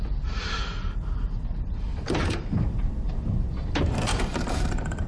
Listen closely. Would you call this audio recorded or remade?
remade